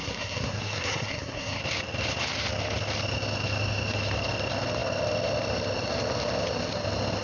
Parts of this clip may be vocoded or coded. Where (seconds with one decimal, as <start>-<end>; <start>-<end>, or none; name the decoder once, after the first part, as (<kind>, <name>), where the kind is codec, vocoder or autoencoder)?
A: 0.0-1.6 (codec, SNAC)